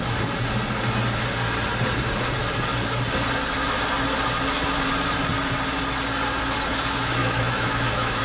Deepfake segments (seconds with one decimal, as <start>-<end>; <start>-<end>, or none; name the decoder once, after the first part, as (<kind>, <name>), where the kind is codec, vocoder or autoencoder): 7.2-8.2 (autoencoder, DAC-VAE)